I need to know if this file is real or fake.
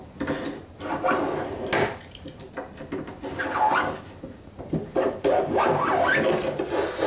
real